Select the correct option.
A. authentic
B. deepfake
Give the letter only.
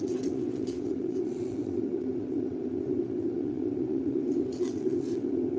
B